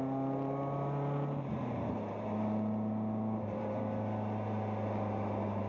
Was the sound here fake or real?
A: real